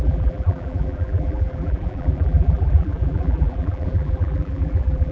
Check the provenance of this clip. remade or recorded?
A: remade